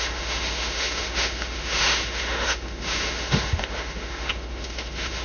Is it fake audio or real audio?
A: fake